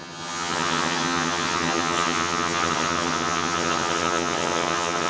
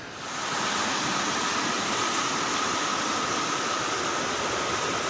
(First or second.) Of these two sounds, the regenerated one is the first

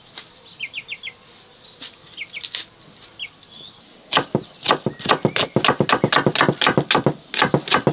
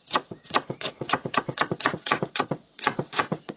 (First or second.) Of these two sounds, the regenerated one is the second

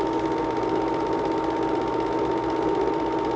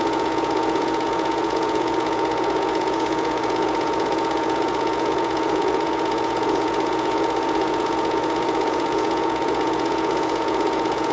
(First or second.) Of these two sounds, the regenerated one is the second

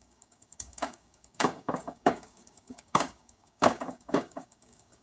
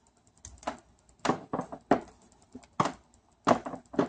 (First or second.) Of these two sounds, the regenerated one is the first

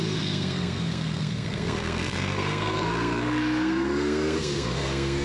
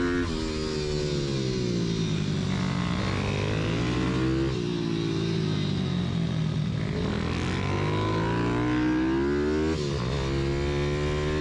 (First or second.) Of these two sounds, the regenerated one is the first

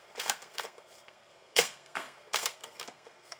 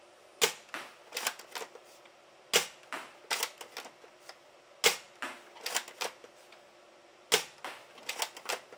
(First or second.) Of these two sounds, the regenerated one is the first